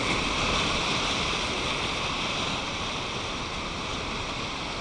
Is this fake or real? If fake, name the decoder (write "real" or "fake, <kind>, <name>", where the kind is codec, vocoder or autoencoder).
real